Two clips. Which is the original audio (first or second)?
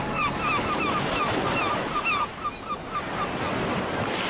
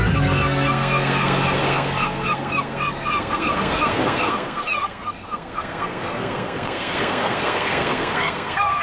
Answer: first